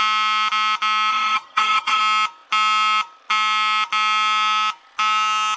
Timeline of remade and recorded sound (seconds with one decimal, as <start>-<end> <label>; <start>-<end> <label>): 0.0-1.1 recorded; 1.1-2.0 remade; 2.0-5.6 recorded